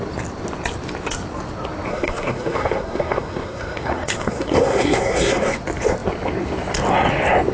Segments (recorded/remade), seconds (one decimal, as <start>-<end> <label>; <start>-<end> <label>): 0.0-1.9 recorded; 1.9-5.6 remade; 5.6-7.5 recorded